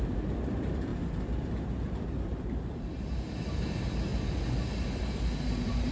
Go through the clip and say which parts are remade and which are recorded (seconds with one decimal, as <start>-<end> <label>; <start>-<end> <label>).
0.0-4.1 remade; 4.1-5.1 recorded; 5.1-5.9 remade